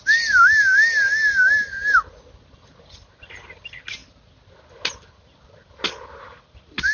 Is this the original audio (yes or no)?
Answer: yes